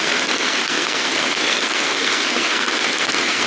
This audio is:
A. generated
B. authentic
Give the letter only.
A